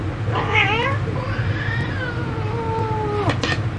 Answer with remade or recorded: recorded